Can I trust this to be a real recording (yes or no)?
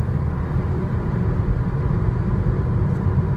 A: yes